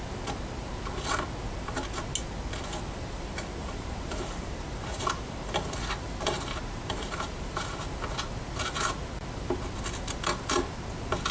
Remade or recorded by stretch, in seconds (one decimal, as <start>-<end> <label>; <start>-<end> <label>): 0.0-3.6 recorded; 3.6-7.8 remade; 7.8-11.3 recorded